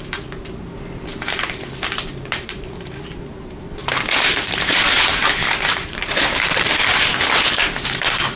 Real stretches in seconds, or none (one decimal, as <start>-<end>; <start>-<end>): 0.0-1.1; 3.4-3.8; 7.6-8.4